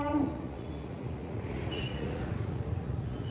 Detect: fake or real fake